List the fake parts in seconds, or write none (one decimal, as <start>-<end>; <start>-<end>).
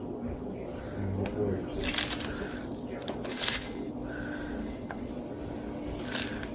3.3-3.9; 4.6-5.1